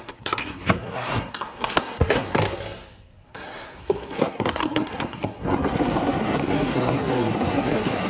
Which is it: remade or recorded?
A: remade